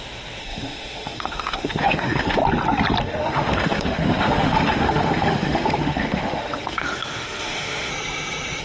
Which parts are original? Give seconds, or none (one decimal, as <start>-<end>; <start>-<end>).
2.4-3.0; 7.9-8.6